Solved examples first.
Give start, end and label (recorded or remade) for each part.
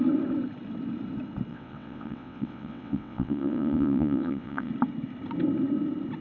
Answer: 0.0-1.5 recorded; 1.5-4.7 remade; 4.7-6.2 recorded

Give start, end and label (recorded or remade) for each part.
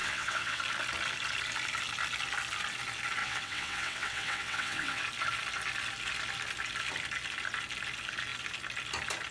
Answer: 0.0-0.6 remade; 0.6-3.2 recorded; 3.2-5.0 remade; 5.0-9.3 recorded